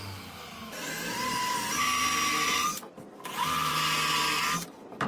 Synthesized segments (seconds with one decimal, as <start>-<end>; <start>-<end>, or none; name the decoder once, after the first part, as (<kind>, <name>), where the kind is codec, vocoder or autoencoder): none